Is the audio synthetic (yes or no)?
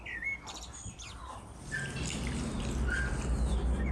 no